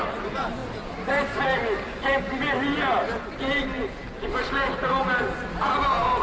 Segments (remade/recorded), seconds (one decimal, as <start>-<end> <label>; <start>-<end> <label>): 0.0-6.2 recorded